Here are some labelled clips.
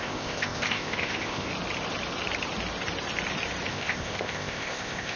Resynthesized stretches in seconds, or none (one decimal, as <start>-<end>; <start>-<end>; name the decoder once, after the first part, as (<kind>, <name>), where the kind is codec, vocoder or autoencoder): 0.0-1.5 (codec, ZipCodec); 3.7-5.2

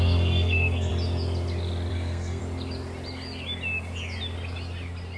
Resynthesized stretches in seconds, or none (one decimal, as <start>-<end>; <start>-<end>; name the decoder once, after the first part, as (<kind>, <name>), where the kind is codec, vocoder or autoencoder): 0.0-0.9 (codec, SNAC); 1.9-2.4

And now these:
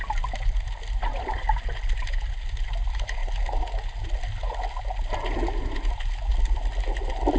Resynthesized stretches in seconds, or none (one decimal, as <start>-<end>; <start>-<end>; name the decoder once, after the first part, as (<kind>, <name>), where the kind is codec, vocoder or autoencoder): none

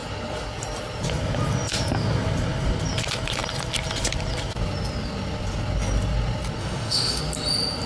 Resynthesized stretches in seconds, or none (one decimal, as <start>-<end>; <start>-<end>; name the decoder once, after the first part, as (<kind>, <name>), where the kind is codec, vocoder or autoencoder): 6.6-7.2 (autoencoder, DAC-VAE)

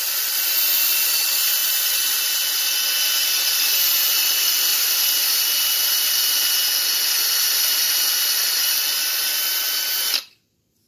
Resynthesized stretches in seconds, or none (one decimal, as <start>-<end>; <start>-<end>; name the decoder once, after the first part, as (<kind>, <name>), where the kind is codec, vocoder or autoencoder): none

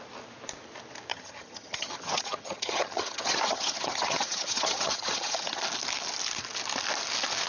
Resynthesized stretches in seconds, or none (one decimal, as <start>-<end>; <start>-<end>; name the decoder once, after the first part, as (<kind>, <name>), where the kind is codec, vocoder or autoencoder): 1.1-5.6 (vocoder, HiFi-GAN)